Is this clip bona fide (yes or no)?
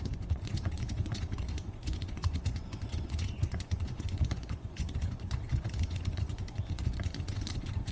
no